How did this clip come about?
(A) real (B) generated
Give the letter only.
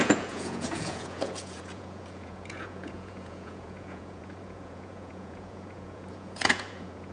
B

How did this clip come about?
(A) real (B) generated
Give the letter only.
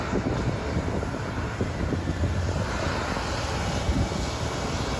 A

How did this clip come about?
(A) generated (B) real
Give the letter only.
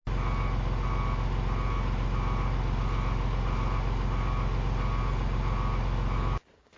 B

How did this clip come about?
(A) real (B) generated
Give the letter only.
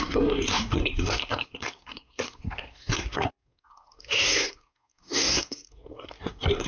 B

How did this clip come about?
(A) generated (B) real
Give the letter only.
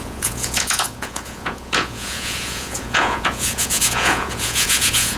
A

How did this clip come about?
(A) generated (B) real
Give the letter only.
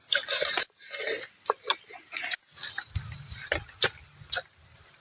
B